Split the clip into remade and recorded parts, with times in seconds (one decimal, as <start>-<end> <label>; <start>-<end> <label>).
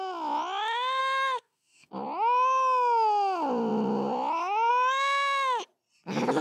0.0-1.0 recorded; 1.0-1.9 remade; 1.9-6.4 recorded